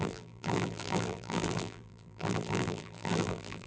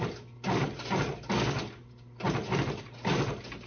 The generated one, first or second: first